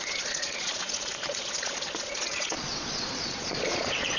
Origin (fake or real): fake